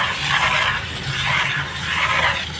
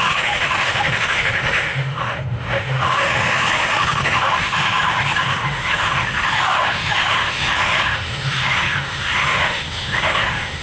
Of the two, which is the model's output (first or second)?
second